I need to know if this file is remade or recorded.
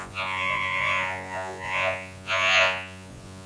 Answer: remade